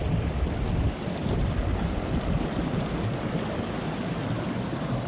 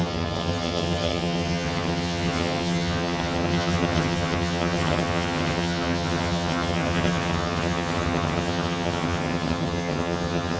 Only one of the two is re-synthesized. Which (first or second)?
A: second